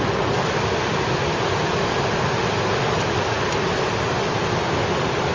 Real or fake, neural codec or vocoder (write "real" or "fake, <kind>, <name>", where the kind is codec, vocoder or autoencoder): real